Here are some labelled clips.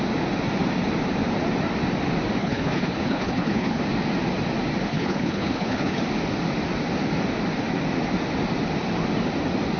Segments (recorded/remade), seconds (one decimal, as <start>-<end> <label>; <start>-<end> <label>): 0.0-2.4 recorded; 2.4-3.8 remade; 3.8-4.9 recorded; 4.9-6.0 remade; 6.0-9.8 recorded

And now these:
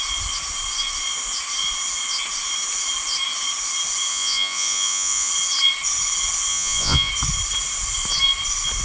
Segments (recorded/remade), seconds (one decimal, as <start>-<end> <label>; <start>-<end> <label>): 0.0-4.1 recorded; 4.1-5.3 remade; 5.3-6.5 recorded; 6.5-7.1 remade; 7.1-8.8 recorded

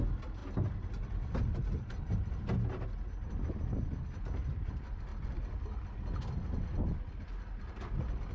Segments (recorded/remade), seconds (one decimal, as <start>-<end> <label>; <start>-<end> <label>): 0.0-8.3 recorded

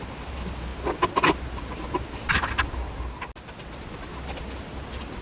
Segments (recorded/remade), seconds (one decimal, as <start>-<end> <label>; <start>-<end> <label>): 0.0-5.2 recorded

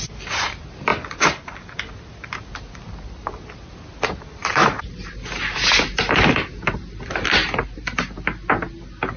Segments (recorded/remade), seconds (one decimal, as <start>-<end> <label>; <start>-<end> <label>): 0.0-7.4 recorded; 7.4-8.0 remade; 8.0-9.2 recorded